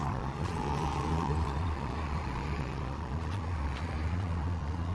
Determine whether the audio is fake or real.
fake